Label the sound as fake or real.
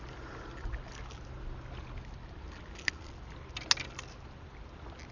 real